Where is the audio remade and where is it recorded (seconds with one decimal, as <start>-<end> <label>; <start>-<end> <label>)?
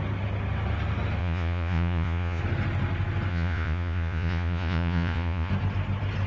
0.0-1.2 recorded; 1.2-2.4 remade; 2.4-3.3 recorded; 3.3-5.5 remade; 5.5-6.3 recorded